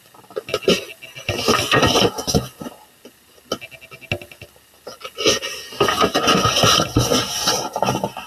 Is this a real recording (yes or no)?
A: yes